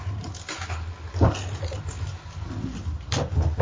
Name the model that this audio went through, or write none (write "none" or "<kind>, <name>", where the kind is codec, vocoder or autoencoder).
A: none